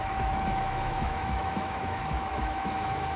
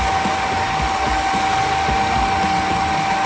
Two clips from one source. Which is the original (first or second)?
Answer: second